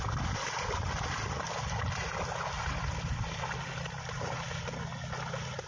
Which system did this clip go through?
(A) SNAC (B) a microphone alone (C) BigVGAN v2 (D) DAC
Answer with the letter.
B